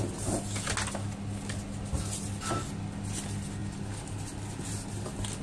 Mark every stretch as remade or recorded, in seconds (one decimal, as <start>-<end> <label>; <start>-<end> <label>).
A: 0.0-5.4 recorded